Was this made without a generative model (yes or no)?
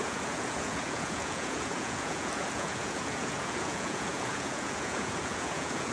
no